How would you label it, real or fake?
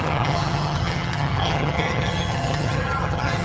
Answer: fake